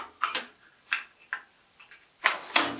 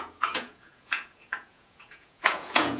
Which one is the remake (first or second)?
second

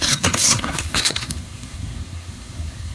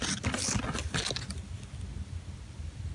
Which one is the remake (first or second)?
first